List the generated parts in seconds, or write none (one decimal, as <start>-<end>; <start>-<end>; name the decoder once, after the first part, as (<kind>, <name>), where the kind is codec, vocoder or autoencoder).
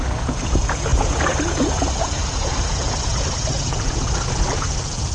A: 0.0-5.1 (vocoder, Vocos)